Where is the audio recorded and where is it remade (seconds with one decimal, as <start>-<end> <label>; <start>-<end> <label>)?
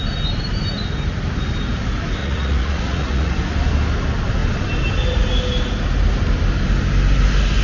0.0-2.2 recorded; 2.2-3.3 remade; 3.3-7.6 recorded